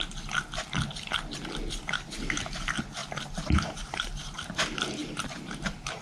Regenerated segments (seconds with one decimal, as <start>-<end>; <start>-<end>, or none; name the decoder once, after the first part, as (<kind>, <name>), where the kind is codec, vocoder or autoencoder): 3.0-4.6 (vocoder, BigVGAN v2); 5.0-6.0